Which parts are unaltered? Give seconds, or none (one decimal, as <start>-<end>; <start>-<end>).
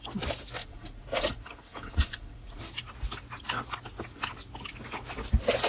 0.0-0.6; 2.6-5.7